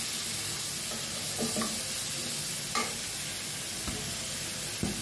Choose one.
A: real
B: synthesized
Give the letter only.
A